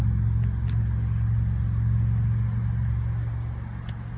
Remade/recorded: recorded